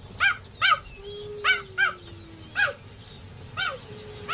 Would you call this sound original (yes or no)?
yes